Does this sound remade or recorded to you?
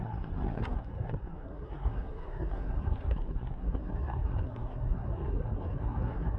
remade